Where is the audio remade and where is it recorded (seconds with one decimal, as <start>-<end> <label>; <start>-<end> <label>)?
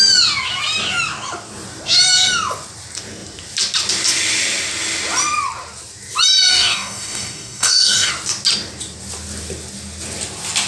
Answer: 0.0-6.5 recorded; 6.5-8.1 remade; 8.1-10.7 recorded